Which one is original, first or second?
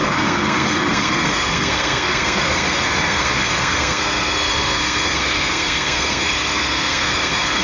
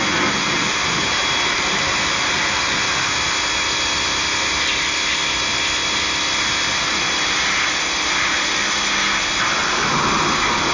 second